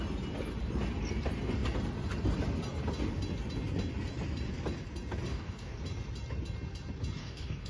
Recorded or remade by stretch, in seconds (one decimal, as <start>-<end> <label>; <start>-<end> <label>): 0.0-5.3 recorded; 5.3-5.8 remade; 5.8-7.2 recorded; 7.2-7.7 remade

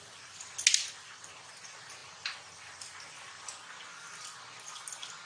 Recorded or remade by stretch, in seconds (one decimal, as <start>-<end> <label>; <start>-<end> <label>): 0.0-5.3 recorded

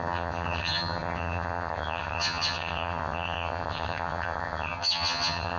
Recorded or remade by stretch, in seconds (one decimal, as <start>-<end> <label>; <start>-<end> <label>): 0.0-5.6 remade

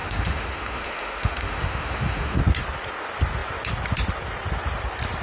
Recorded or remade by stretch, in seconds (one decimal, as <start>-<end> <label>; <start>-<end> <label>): 0.0-2.4 remade; 2.4-5.2 recorded

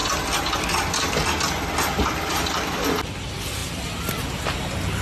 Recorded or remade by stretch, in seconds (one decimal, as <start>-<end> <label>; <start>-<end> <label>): 0.0-5.0 recorded

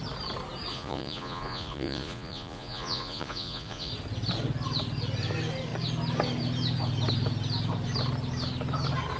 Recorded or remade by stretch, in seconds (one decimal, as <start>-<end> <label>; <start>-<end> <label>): 0.0-0.7 recorded; 0.7-3.9 remade; 3.9-9.2 recorded

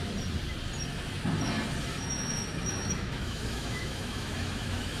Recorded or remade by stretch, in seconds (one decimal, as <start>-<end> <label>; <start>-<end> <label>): 0.0-1.9 recorded; 1.9-5.0 remade